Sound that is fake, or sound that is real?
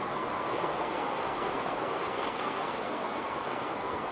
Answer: fake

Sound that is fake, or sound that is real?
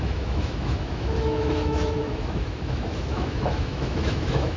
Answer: fake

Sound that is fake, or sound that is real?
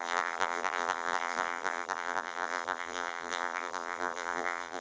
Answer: fake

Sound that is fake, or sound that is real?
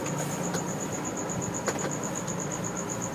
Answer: real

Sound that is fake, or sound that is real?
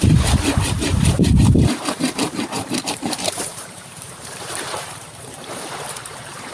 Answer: fake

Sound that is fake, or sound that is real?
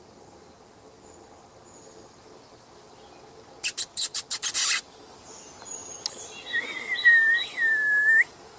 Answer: real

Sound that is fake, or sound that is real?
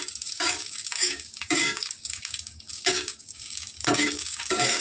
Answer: fake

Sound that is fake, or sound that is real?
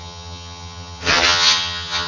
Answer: fake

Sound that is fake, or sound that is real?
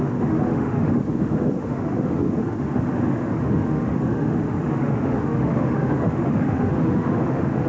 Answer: fake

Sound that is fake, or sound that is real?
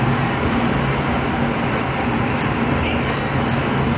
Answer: real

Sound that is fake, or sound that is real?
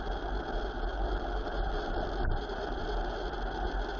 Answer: real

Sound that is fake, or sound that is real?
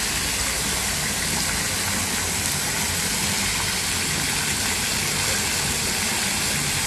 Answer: real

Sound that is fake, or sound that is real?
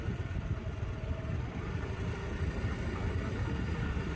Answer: real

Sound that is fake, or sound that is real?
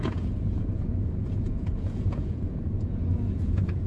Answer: fake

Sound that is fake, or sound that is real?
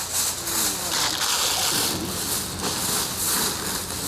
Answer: real